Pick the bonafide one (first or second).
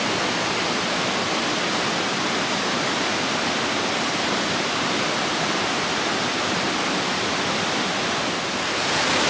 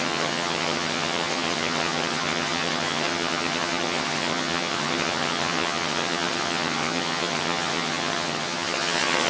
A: first